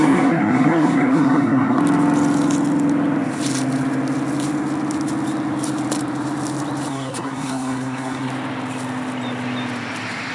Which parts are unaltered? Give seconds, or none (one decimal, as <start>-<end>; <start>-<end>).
1.8-6.9; 8.3-10.3